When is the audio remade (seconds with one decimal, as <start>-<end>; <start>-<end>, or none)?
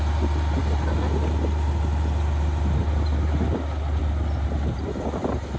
none